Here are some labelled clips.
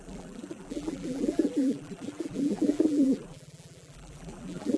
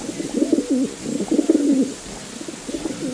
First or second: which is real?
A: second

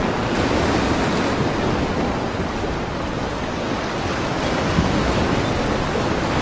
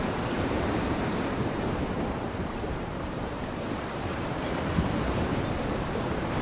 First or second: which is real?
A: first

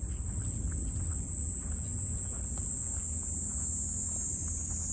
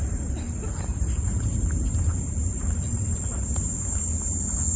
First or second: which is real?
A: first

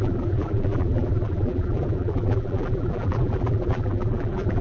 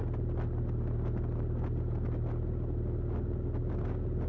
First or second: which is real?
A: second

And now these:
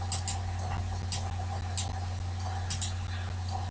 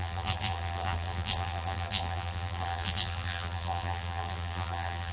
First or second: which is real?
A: first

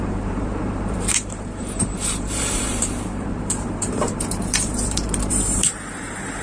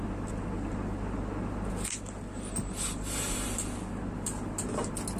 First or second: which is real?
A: second